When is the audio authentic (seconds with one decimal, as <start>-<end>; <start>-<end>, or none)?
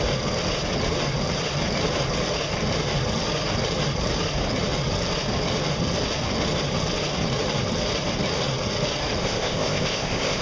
0.0-9.2